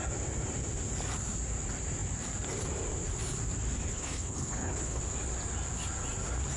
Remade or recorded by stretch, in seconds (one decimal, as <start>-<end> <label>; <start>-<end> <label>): 0.0-3.9 recorded; 3.9-5.0 remade; 5.0-6.6 recorded